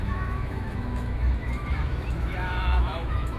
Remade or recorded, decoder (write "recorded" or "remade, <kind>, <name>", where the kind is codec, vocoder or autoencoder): remade, autoencoder, DAC-VAE